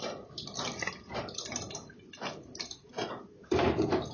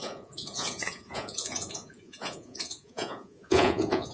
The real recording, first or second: first